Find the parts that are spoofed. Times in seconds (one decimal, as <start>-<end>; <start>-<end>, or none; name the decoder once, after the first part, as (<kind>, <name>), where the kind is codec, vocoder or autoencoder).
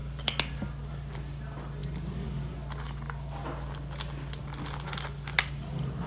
none